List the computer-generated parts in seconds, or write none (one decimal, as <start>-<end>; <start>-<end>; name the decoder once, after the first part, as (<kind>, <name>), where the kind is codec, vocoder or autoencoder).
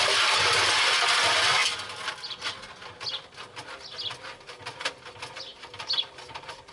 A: 5.5-6.1 (vocoder, BigVGAN v2)